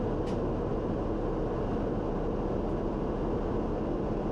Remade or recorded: recorded